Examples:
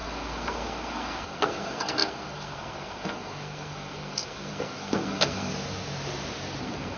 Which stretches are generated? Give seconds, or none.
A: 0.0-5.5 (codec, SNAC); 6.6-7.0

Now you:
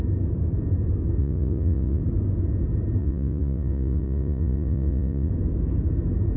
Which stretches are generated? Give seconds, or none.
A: 1.2-2.0 (vocoder, Vocos); 3.0-5.3

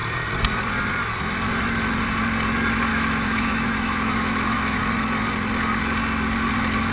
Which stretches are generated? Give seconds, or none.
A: 2.9-4.8 (autoencoder, DAC-VAE)

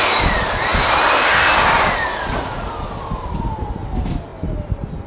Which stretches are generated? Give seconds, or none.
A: 2.1-2.7 (vocoder, Vocos)